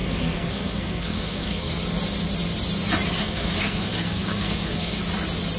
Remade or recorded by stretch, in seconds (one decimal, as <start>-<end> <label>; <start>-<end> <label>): 0.0-1.7 remade; 1.7-3.2 recorded; 3.2-5.0 remade; 5.0-5.6 recorded